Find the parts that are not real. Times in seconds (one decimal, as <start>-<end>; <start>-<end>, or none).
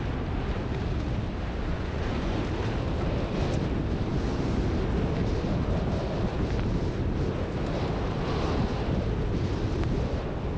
1.7-2.4